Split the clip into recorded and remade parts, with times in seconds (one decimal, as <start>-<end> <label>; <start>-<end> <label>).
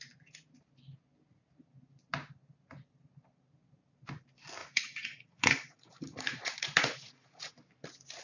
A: 0.0-4.6 recorded; 4.6-7.4 remade; 7.4-8.2 recorded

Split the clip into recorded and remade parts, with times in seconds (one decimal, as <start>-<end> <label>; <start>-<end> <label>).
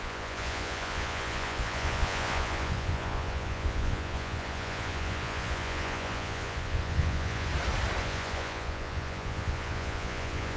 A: 0.0-7.5 remade; 7.5-8.0 recorded; 8.0-10.6 remade